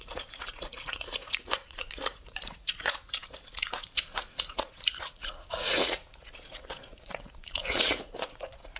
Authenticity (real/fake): fake